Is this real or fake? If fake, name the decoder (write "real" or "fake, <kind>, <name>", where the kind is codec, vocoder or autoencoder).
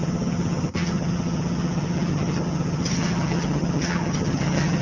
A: fake, vocoder, HiFi-GAN